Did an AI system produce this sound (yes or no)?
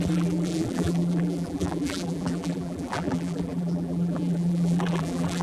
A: yes